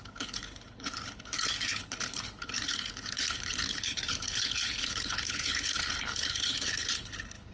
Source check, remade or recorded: remade